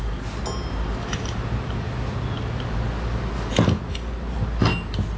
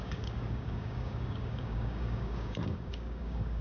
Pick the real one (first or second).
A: first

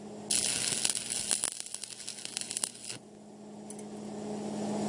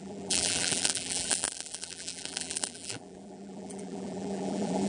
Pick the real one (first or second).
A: first